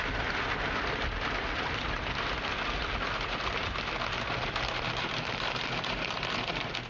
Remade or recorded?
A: remade